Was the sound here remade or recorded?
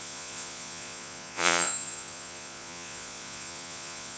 remade